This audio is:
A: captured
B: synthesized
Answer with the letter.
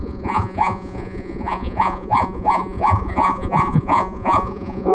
B